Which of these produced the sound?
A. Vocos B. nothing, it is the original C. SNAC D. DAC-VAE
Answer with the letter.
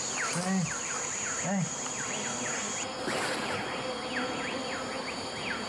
B